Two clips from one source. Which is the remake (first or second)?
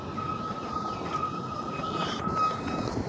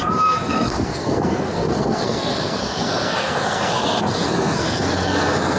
second